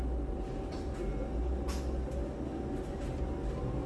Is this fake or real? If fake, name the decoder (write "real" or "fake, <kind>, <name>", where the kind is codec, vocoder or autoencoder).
real